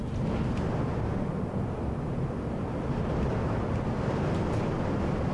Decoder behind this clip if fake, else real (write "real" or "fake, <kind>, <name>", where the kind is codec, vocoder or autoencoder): real